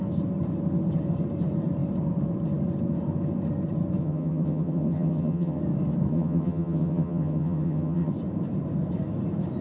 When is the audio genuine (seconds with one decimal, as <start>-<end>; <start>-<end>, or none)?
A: 0.0-4.0; 5.6-6.1; 8.1-9.6